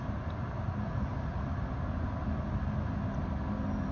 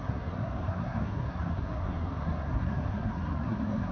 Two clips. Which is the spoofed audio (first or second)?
second